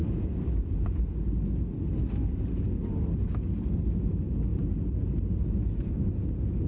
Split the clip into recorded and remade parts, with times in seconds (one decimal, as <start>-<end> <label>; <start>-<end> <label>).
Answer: 0.0-6.7 recorded